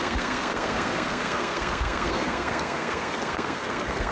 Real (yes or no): no